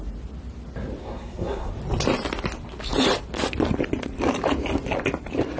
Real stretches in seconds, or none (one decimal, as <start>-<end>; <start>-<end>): 0.0-1.0; 1.7-5.6

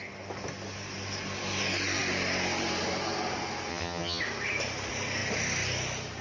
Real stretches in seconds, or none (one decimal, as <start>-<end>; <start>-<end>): 0.0-3.7; 4.2-6.2

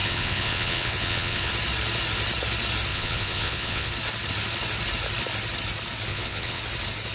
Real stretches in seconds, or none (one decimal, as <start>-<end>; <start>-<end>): 1.5-2.9; 3.9-6.1; 6.6-7.1

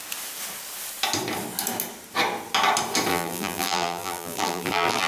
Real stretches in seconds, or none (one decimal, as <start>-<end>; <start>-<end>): 0.0-3.1